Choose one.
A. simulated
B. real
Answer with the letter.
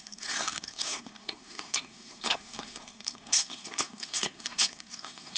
A